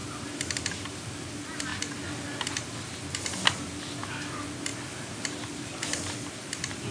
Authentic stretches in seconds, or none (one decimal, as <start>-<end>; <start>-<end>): 0.0-6.9